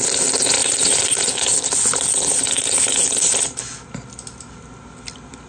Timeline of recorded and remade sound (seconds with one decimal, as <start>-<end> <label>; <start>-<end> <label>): 0.0-5.5 recorded